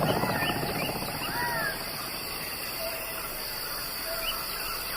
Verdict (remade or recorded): recorded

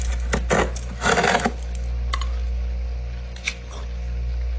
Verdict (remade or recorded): recorded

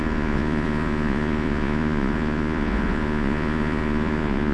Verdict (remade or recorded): remade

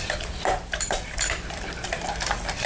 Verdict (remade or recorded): remade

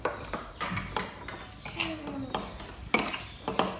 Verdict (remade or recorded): recorded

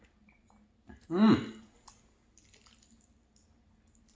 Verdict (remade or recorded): recorded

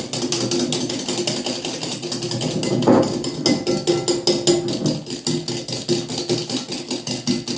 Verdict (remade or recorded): recorded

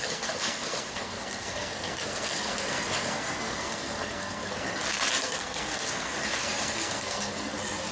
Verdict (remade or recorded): remade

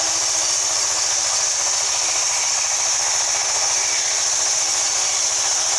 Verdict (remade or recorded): recorded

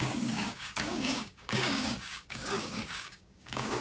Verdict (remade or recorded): remade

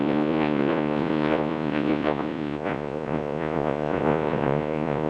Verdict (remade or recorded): remade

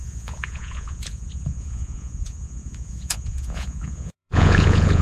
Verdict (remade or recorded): remade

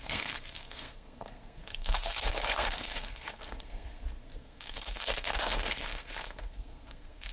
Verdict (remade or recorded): remade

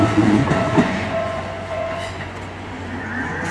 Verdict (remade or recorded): remade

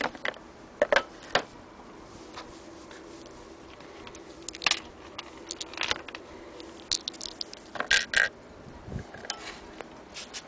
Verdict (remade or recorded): recorded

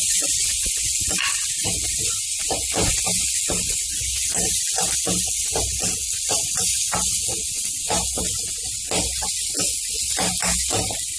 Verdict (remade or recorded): recorded